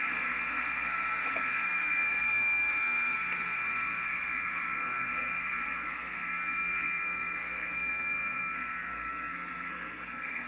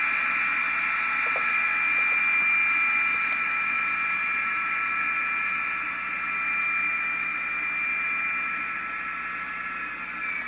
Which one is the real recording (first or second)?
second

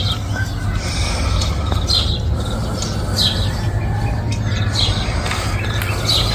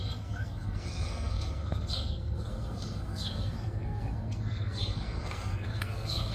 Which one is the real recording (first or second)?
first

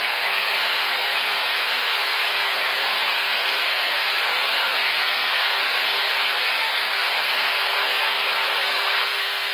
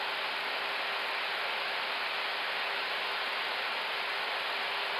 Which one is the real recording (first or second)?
second